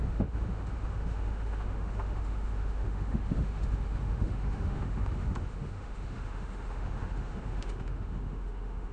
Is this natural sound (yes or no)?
no